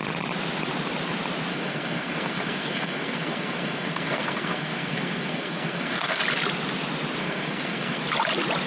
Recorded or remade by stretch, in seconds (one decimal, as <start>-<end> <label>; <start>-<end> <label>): 0.0-1.5 recorded; 1.5-6.2 remade; 6.2-7.2 recorded; 7.2-8.0 remade; 8.0-8.7 recorded